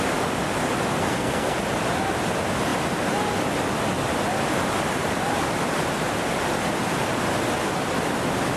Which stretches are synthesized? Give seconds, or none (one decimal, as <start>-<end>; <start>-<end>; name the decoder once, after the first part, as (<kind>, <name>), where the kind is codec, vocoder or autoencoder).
1.0-1.6 (codec, SNAC)